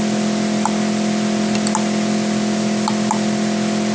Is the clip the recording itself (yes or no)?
yes